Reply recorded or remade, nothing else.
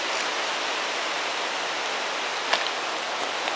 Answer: recorded